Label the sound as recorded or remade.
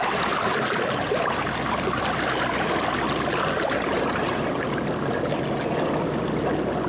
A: recorded